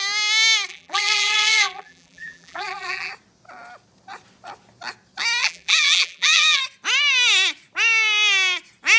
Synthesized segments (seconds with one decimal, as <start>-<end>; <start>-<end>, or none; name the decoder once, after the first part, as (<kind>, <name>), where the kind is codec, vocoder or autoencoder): 0.7-3.1 (vocoder, BigVGAN v2); 5.4-6.6